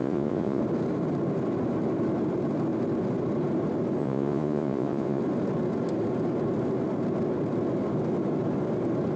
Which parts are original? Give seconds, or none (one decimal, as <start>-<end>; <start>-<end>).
0.6-4.0; 5.2-9.2